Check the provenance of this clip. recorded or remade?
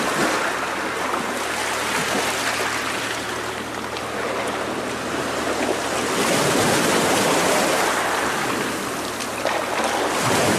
recorded